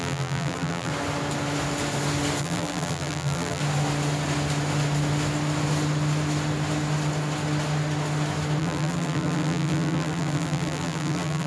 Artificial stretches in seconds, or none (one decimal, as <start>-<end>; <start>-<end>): 0.0-0.9; 2.4-3.6; 8.6-11.5